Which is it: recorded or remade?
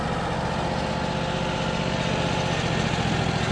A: recorded